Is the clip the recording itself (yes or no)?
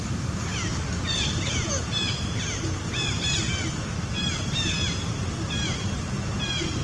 yes